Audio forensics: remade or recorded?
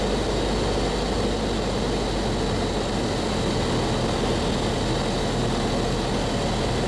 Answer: recorded